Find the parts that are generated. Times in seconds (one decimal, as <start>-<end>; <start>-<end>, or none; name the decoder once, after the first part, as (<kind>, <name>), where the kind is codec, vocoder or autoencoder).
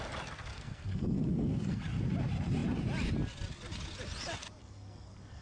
0.5-1.8 (codec, SNAC); 4.6-5.4